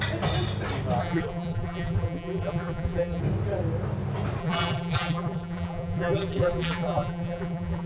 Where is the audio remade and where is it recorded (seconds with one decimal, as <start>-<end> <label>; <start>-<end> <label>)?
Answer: 0.0-1.0 recorded; 1.0-3.2 remade; 3.2-4.4 recorded; 4.4-7.9 remade